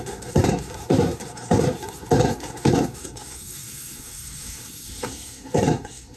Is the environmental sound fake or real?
fake